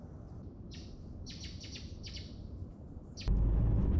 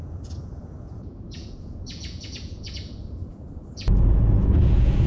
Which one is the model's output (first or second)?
second